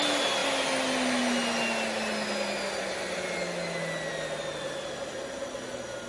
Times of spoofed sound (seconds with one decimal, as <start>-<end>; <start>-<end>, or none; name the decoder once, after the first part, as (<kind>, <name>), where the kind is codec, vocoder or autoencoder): none